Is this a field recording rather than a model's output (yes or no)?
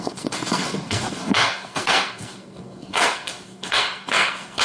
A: no